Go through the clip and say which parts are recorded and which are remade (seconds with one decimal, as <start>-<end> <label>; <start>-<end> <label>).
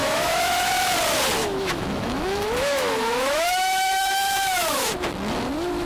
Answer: 0.0-0.7 remade; 0.7-1.4 recorded; 1.4-4.9 remade; 4.9-5.9 recorded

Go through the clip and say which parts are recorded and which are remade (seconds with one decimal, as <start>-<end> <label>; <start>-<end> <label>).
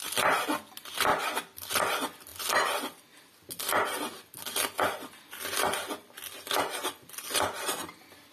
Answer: 0.0-8.3 recorded